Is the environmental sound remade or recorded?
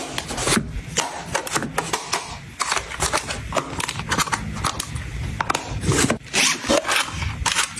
recorded